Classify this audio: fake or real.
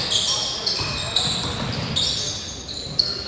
real